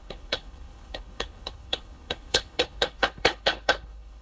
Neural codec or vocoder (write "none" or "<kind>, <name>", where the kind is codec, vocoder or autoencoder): codec, HILCodec